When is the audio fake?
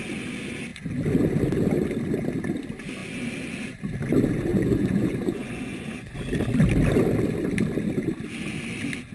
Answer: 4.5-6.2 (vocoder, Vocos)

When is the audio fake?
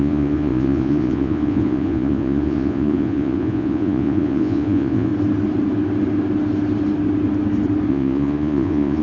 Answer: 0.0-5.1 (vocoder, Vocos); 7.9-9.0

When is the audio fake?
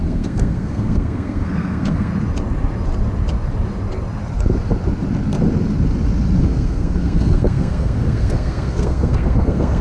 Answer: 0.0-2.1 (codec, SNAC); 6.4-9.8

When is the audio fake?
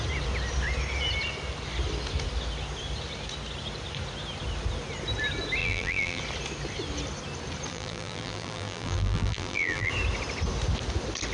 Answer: 5.6-6.2 (vocoder, BigVGAN v2); 7.7-9.9